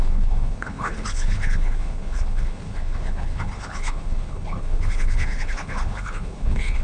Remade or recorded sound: remade